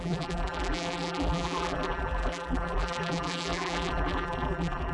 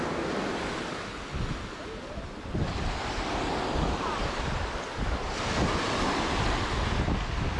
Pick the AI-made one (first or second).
first